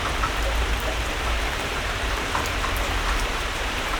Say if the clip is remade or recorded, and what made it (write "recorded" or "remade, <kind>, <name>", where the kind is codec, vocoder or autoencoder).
remade, vocoder, BigVGAN v2